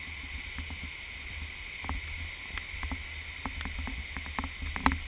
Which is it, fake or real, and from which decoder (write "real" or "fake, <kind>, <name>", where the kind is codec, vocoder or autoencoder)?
real